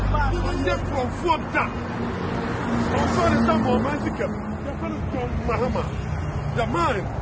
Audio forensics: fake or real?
real